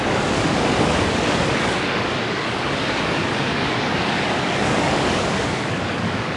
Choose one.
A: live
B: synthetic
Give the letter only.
B